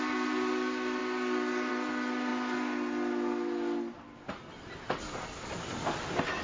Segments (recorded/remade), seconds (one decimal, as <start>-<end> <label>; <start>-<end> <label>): 0.0-6.4 recorded